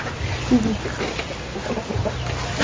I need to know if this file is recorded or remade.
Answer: recorded